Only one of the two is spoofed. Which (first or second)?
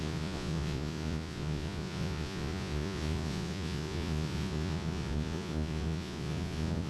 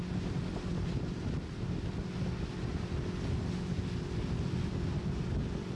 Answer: first